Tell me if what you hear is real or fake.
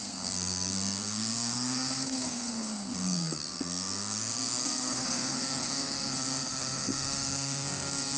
fake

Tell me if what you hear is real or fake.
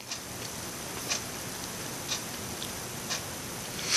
real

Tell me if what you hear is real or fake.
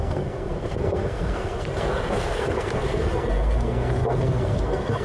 fake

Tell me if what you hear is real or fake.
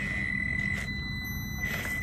real